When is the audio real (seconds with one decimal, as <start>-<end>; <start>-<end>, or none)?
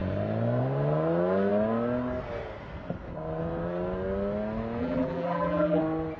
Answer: 0.0-4.8; 5.8-6.2